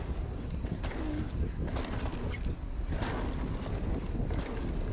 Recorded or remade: recorded